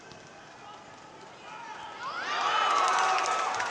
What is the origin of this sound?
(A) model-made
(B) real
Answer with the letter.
B